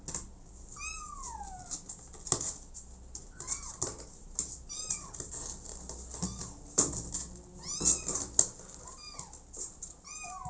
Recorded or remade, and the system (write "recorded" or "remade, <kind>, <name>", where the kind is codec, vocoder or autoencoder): recorded